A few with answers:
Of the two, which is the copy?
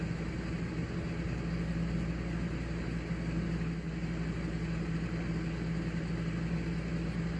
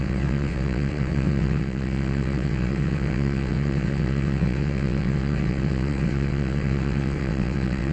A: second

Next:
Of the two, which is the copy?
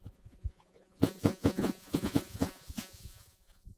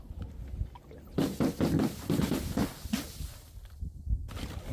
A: first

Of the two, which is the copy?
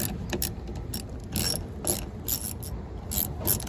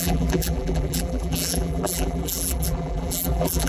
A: second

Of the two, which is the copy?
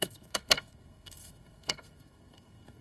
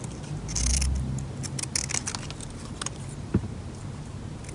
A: first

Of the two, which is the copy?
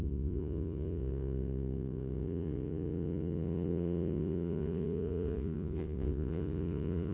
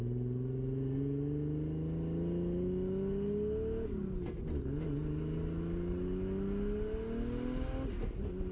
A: first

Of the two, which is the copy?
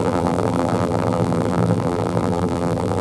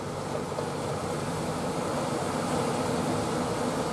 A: first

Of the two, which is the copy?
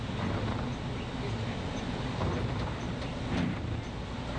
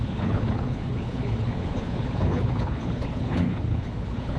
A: second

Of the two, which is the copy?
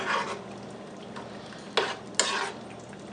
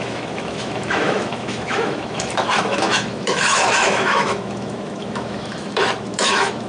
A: second